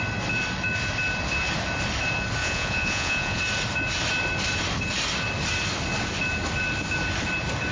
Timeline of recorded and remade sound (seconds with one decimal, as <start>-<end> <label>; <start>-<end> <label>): 0.0-2.4 recorded; 2.4-3.4 remade; 3.4-7.7 recorded